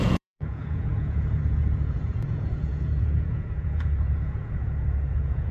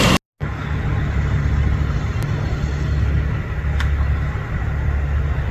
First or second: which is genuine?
second